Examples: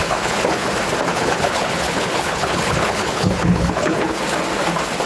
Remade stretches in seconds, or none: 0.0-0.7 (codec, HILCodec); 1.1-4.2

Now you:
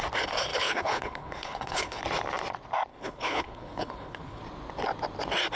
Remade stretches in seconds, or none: 0.5-2.0 (codec, HILCodec); 2.9-4.4

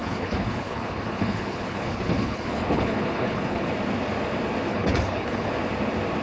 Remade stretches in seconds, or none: 0.0-3.7 (codec, HILCodec); 4.7-5.5

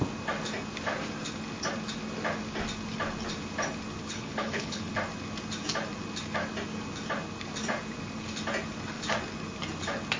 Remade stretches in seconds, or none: 4.0-4.9 (codec, HILCodec)

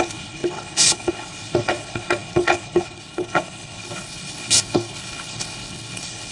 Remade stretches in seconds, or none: 0.0-6.3 (codec, HILCodec)

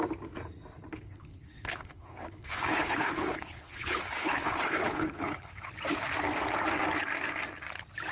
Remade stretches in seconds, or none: 0.9-5.7 (codec, HILCodec)